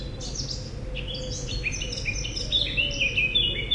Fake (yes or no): no